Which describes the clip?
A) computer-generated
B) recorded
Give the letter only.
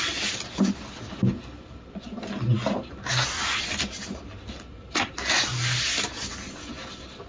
B